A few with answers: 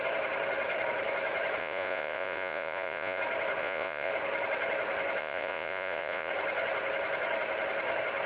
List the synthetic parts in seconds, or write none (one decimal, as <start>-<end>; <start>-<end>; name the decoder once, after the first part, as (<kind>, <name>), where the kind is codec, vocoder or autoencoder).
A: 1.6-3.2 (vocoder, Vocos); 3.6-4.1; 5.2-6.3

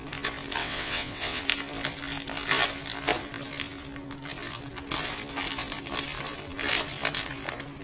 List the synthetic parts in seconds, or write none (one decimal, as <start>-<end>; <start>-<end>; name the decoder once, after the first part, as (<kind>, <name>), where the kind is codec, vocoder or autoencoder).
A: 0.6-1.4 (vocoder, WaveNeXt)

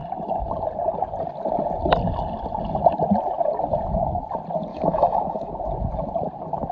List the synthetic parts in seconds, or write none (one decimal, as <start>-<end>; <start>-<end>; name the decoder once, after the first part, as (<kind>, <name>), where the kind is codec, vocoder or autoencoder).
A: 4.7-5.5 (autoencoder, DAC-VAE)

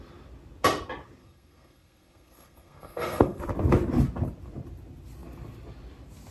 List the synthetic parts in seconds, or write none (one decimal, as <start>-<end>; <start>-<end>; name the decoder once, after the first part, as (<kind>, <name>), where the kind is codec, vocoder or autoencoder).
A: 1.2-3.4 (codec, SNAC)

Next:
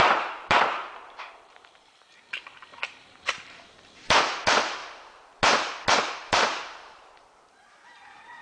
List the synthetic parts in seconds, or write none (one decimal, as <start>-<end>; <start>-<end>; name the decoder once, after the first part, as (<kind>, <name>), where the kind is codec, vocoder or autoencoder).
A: 0.0-4.8 (vocoder, BigVGAN v2); 6.0-8.4

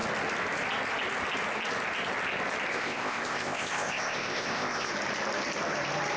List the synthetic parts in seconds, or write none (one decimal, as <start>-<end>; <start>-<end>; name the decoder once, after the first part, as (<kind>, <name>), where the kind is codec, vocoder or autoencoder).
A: 2.7-4.9 (codec, ZipCodec)

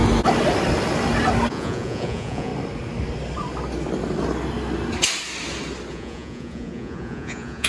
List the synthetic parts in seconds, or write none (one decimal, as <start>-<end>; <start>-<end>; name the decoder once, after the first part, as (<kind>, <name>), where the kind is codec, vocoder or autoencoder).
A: 1.5-2.5 (vocoder, Vocos); 5.9-7.7